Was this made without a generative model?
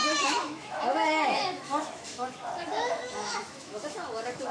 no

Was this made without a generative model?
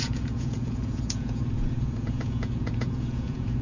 no